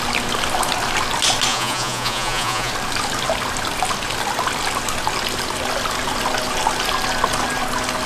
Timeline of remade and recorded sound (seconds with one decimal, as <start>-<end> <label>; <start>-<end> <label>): 0.0-1.5 recorded; 1.5-2.7 remade; 2.7-8.1 recorded